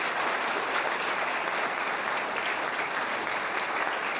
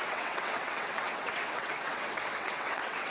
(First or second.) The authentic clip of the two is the first